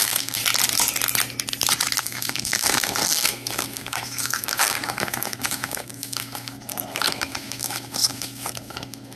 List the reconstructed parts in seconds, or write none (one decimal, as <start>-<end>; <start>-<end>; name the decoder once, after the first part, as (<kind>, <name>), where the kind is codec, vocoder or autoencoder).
0.0-0.4 (codec, SNAC); 2.0-9.2